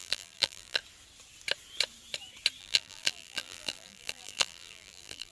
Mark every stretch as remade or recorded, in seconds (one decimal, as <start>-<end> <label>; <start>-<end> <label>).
0.0-0.8 remade; 0.8-2.6 recorded; 2.6-5.3 remade